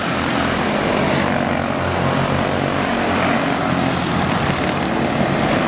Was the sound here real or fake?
real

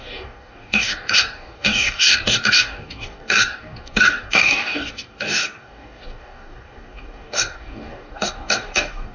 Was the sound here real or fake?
fake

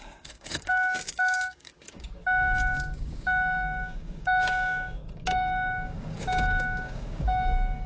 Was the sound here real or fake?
fake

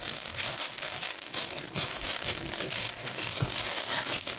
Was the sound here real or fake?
fake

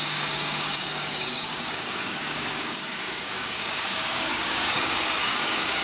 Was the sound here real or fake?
fake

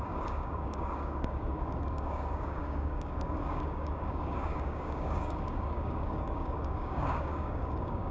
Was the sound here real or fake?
fake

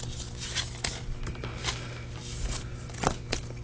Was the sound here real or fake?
real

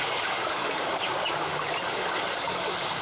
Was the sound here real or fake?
fake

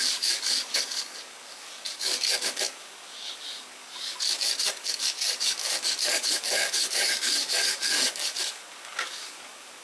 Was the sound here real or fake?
fake